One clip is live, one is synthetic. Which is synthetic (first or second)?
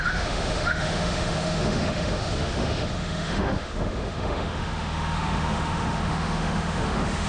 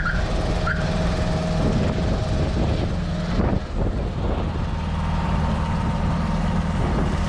first